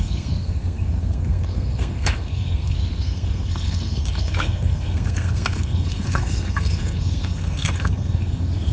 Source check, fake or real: fake